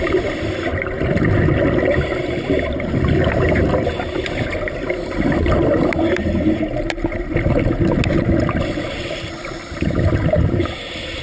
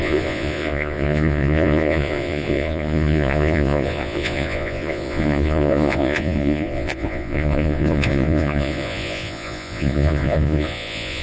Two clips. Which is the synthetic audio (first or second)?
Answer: second